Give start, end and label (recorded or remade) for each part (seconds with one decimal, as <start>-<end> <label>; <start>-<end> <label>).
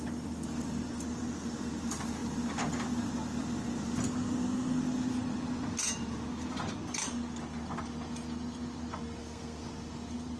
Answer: 0.0-9.2 recorded; 9.2-9.7 remade; 9.7-10.4 recorded